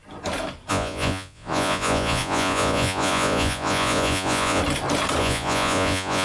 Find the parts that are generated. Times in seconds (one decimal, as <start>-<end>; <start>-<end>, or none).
0.7-4.6; 5.2-6.2